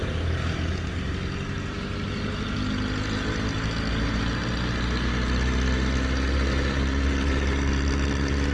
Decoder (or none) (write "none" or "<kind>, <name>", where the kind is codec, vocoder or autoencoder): none